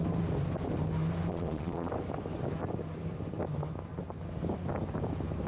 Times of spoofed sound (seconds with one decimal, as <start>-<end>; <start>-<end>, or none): 1.3-1.9